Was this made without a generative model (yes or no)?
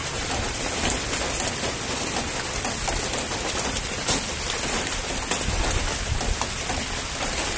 yes